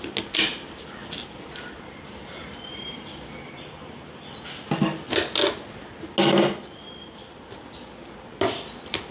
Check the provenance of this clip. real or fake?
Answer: real